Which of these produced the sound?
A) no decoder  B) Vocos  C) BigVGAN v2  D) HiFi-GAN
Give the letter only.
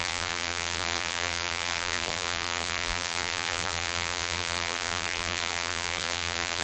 C